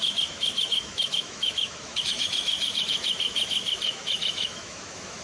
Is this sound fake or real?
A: fake